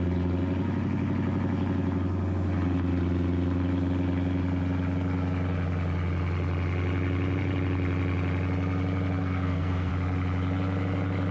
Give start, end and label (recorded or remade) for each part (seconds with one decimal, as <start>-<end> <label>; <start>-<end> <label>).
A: 0.0-9.2 recorded; 9.2-9.9 remade; 9.9-11.3 recorded